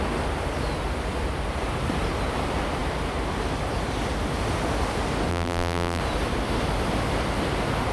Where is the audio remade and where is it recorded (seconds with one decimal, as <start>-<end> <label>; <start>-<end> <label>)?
0.0-5.3 recorded; 5.3-6.0 remade; 6.0-7.9 recorded